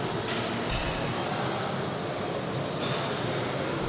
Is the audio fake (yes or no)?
no